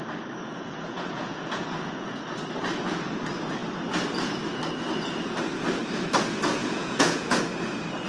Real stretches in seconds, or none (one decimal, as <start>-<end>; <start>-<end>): 0.0-0.4; 2.2-6.6; 7.4-8.1